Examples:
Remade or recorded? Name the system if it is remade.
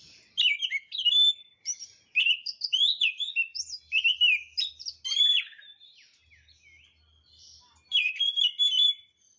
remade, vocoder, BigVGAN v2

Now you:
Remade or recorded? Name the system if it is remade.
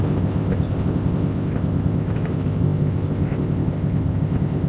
remade, codec, ZipCodec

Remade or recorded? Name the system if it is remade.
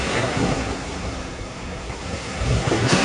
remade, codec, SNAC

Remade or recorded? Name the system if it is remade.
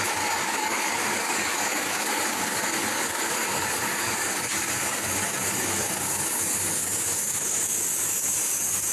remade, codec, DAC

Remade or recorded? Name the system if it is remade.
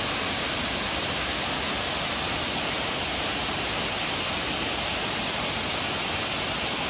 recorded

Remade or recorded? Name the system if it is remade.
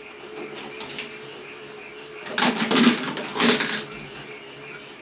recorded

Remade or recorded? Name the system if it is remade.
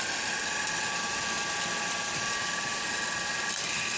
recorded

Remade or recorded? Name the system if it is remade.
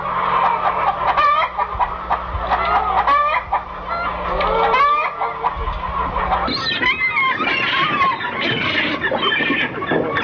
recorded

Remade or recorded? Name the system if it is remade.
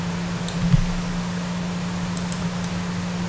recorded